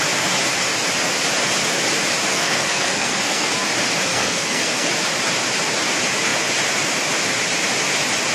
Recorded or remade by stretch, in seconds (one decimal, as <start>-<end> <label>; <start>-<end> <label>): 0.0-2.3 recorded; 2.3-3.5 remade; 3.5-4.1 recorded; 4.1-4.9 remade; 4.9-8.3 recorded